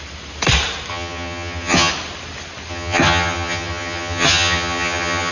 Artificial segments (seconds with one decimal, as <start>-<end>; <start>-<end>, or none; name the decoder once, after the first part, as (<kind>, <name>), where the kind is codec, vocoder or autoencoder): 0.9-1.9 (vocoder, HiFi-GAN); 2.7-5.3